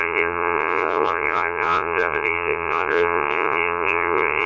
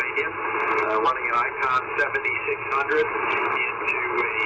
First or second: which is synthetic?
first